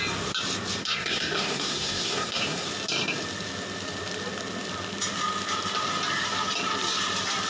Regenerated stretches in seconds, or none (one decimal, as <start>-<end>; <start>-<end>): 0.8-2.7